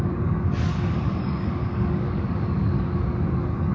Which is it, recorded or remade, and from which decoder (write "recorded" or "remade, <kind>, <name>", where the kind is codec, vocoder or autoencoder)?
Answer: remade, codec, DAC